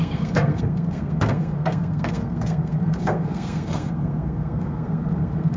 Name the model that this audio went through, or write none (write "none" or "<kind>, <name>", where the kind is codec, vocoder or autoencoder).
codec, SNAC